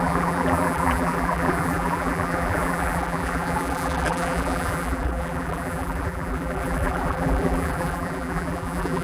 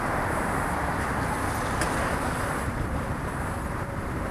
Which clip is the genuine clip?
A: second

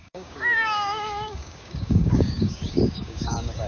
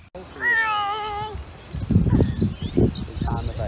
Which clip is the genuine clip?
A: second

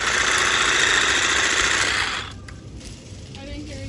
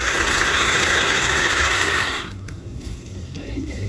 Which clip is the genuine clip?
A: first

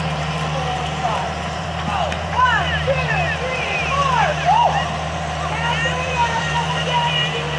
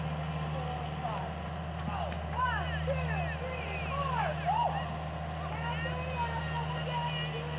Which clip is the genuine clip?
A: second